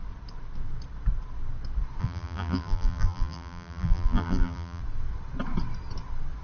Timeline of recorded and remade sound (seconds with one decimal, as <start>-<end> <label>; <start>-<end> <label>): 0.0-2.0 recorded; 2.0-4.8 remade; 4.8-6.4 recorded